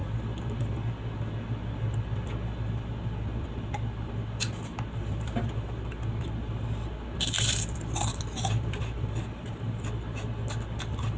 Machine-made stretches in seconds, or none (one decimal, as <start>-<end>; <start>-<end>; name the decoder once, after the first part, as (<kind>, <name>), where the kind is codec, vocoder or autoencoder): none